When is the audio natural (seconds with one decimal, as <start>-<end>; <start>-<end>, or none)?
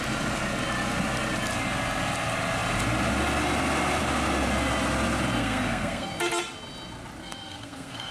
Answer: 0.0-5.4; 6.1-7.2